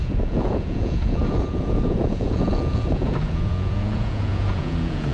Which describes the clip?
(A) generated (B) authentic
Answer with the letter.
A